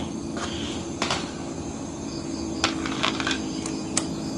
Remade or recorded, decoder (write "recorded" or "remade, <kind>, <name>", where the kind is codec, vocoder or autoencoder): recorded